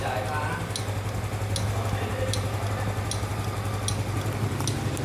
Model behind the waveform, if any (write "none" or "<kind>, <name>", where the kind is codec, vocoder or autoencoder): none